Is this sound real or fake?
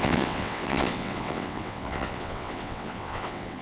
fake